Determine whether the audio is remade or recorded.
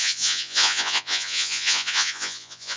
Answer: remade